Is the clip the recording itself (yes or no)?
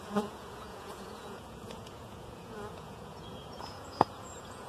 no